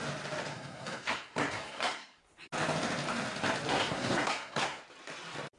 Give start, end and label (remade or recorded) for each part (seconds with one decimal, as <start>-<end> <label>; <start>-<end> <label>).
0.0-0.5 recorded; 0.5-2.2 remade; 2.2-3.7 recorded; 3.7-4.8 remade; 4.8-5.6 recorded